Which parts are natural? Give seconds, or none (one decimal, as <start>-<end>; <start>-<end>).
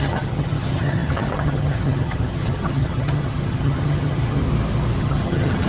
4.4-5.0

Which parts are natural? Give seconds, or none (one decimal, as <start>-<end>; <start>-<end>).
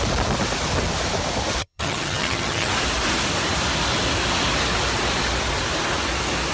0.0-1.6; 2.7-6.5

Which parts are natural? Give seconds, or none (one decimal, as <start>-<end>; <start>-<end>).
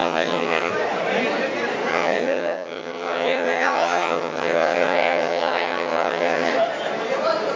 0.7-1.9; 6.5-7.6